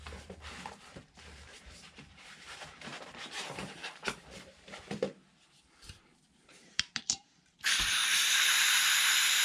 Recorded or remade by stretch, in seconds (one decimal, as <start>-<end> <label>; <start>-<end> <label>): 0.0-9.4 remade